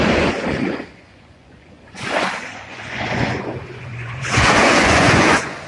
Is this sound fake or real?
fake